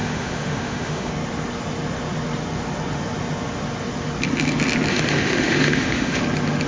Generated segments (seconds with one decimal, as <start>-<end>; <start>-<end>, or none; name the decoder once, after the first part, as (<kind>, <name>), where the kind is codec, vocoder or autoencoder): 0.0-1.1 (autoencoder, DAC-VAE); 4.9-6.2